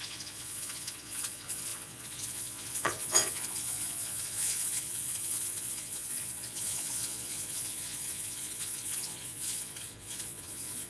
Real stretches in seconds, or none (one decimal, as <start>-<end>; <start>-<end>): none